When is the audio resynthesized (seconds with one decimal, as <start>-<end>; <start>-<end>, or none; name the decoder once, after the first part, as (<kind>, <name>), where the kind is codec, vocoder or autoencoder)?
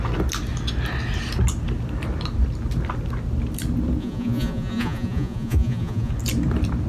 4.0-6.1 (vocoder, Vocos)